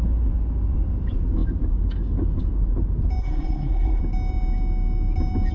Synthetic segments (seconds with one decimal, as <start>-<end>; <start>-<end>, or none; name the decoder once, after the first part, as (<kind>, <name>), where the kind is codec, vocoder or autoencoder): 3.2-4.0 (codec, SNAC)